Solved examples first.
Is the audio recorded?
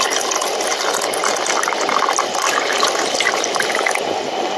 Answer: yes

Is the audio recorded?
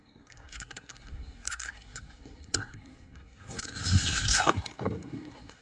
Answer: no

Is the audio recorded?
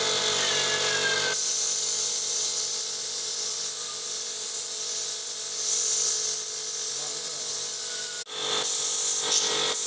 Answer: yes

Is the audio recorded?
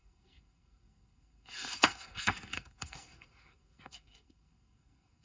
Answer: no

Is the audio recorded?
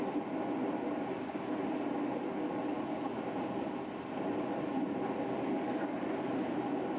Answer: yes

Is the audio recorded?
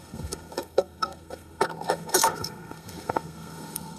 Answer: no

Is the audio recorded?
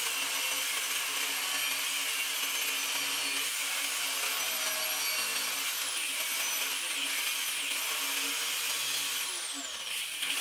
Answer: yes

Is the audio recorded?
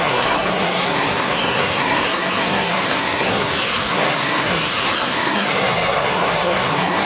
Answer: no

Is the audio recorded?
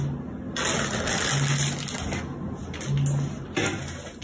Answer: yes